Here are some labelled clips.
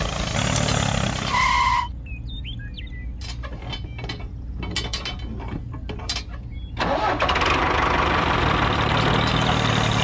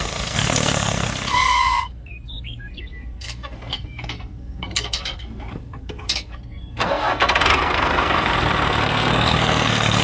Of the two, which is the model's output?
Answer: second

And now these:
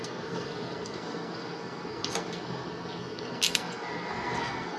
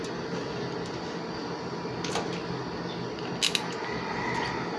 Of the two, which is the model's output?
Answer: first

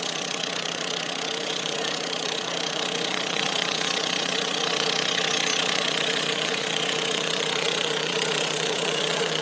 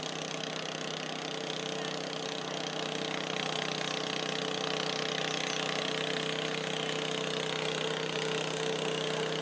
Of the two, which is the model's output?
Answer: first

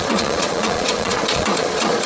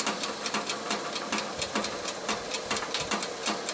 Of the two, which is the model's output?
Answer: first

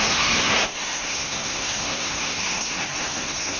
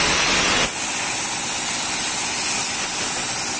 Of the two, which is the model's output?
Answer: first